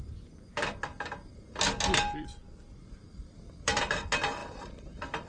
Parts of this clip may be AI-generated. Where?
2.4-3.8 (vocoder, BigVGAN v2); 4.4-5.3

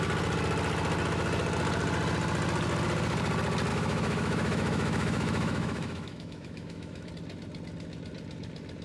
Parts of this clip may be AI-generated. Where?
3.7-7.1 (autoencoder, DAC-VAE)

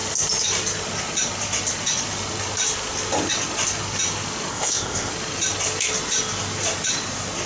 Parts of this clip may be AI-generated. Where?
4.5-5.1 (codec, ZipCodec)

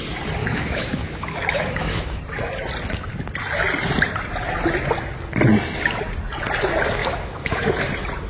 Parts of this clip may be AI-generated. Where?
0.4-2.2 (autoencoder, DAC-VAE); 7.0-7.7